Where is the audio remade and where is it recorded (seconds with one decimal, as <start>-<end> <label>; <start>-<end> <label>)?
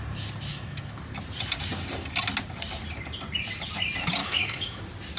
0.0-0.5 recorded; 0.5-1.0 remade; 1.0-4.2 recorded; 4.2-4.8 remade; 4.8-5.2 recorded